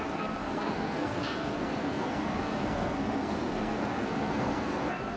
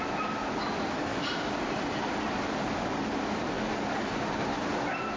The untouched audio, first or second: second